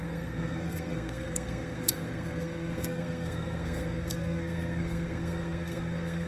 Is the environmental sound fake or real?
fake